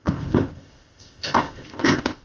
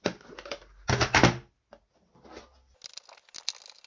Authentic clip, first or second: second